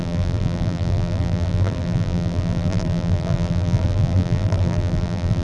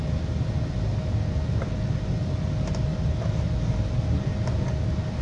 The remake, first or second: first